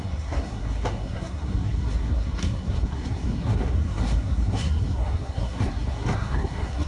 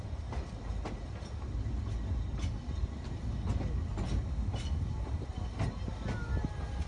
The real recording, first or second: second